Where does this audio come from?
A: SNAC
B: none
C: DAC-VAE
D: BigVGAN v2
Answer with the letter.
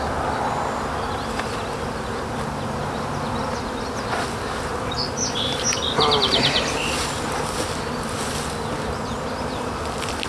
B